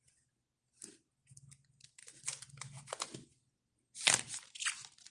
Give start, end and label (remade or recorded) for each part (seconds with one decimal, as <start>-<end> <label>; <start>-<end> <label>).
0.0-5.1 recorded